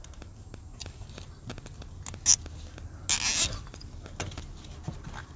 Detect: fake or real real